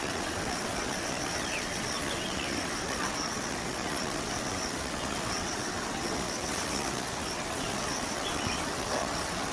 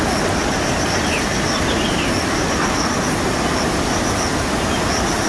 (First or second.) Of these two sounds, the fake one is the first